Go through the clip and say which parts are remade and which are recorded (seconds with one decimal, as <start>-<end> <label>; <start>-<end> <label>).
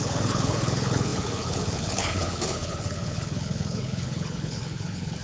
0.0-5.2 remade